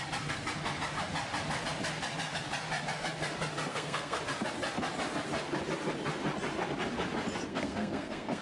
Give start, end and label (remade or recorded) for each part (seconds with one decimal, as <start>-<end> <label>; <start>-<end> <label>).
0.0-3.7 recorded; 3.7-4.2 remade; 4.2-7.5 recorded; 7.5-8.4 remade